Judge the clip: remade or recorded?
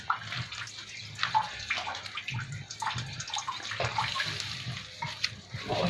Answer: recorded